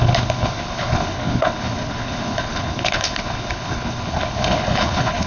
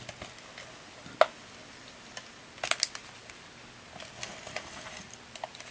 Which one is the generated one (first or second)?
first